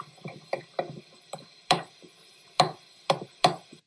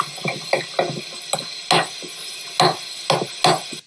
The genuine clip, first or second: second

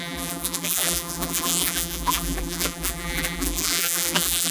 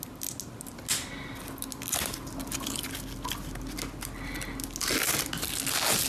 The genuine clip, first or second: second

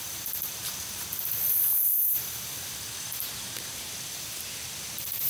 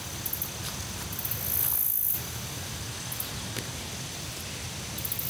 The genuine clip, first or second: second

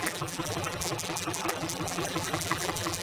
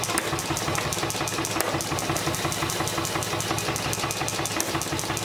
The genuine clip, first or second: second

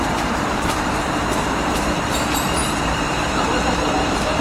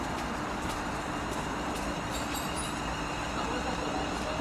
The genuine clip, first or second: second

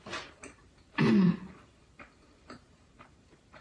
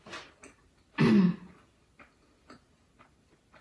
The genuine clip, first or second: second